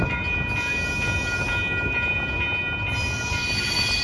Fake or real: real